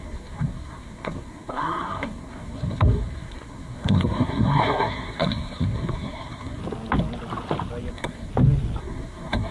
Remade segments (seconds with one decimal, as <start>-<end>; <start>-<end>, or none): 0.0-6.6; 7.9-8.3; 8.8-9.5